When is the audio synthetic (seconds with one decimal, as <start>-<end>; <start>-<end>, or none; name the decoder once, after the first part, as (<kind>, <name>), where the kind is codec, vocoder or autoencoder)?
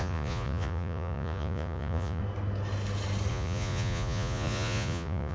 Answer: 0.0-2.2 (vocoder, Vocos); 3.3-5.3